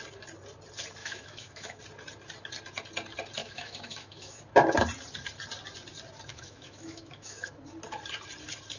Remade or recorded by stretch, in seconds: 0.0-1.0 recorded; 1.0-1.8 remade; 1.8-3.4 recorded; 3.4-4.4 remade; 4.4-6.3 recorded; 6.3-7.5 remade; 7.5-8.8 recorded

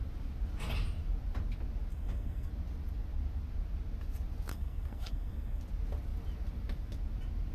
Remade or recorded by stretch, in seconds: 0.0-1.9 recorded; 1.9-2.5 remade; 2.5-4.5 recorded; 4.5-5.6 remade; 5.6-7.5 recorded

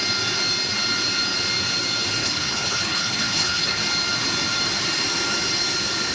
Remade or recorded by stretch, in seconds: 0.0-2.2 recorded; 2.2-3.8 remade; 3.8-6.1 recorded

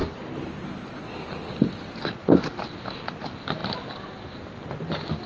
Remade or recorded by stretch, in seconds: 0.0-5.3 recorded

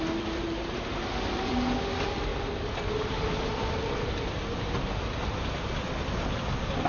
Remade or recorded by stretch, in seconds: 0.0-6.9 recorded

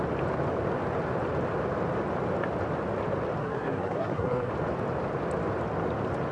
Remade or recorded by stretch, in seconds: 0.0-3.4 recorded; 3.4-4.5 remade; 4.5-6.3 recorded

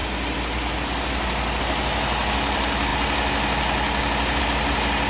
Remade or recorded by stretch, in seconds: 0.0-5.1 recorded